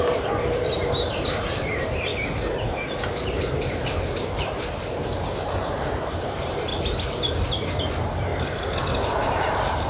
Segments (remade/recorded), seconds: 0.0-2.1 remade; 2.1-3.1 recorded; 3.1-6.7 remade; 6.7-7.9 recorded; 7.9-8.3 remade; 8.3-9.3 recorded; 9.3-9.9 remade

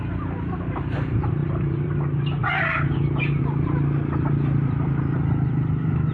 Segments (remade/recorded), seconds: 0.0-1.4 recorded; 1.4-2.0 remade; 2.0-2.4 recorded; 2.4-3.4 remade; 3.4-6.1 recorded

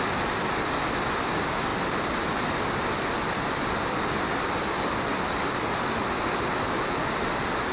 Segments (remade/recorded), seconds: 0.0-7.7 recorded

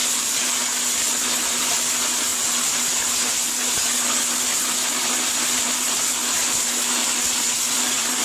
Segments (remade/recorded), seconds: 0.0-0.6 remade; 0.6-7.0 recorded; 7.0-8.2 remade

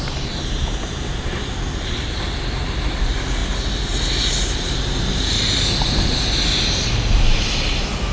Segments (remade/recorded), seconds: 0.0-8.1 remade

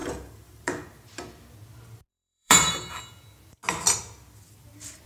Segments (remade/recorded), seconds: 0.0-0.7 remade; 0.7-2.1 recorded; 2.1-2.7 remade; 2.7-5.1 recorded